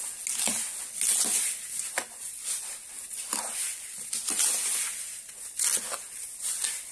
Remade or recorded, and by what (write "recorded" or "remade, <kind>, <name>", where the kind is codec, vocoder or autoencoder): recorded